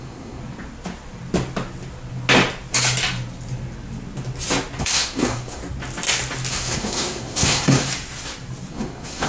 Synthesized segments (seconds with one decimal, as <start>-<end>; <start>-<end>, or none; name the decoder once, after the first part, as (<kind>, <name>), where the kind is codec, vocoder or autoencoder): 0.0-0.4 (codec, SNAC); 4.8-5.6; 6.5-7.9; 8.7-9.3